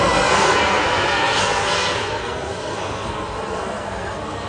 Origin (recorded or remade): remade